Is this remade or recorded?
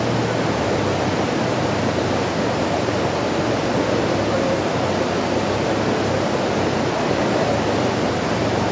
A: recorded